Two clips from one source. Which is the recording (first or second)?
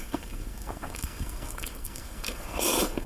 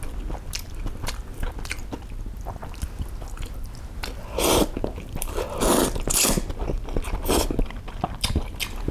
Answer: second